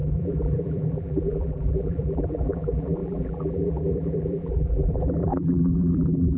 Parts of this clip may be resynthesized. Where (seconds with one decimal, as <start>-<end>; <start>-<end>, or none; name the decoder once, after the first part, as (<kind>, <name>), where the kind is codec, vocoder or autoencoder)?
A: 0.0-6.4 (vocoder, BigVGAN v2)